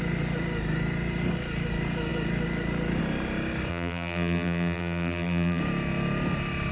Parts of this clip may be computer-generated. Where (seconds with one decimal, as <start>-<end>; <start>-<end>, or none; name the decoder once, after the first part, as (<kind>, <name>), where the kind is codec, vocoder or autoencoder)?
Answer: 3.7-5.6 (vocoder, BigVGAN v2)